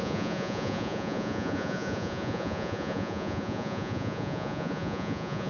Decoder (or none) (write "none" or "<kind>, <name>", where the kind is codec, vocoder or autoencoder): vocoder, Vocos